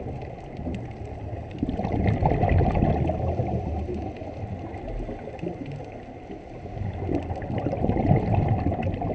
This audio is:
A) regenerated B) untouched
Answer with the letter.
B